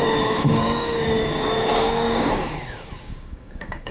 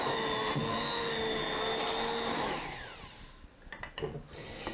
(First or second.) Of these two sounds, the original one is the second